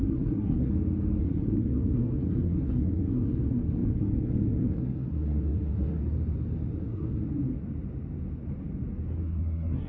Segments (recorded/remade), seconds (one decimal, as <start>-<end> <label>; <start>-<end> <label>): 0.0-0.7 remade; 0.7-1.2 recorded; 1.2-6.0 remade; 6.0-6.8 recorded; 6.8-7.2 remade; 7.2-9.2 recorded; 9.2-9.9 remade